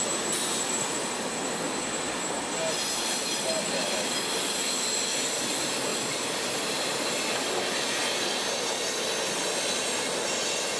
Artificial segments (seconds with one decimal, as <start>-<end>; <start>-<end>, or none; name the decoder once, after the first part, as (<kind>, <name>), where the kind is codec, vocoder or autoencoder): 5.9-7.1 (vocoder, BigVGAN v2)